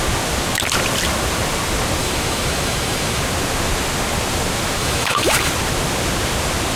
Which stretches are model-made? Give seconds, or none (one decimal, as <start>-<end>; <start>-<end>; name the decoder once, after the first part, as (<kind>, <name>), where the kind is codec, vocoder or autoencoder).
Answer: 2.0-3.2 (autoencoder, DAC-VAE); 4.8-5.5